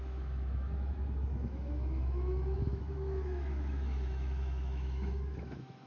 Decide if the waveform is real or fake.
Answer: fake